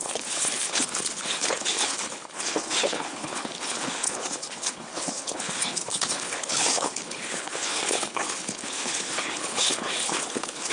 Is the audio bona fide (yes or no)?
no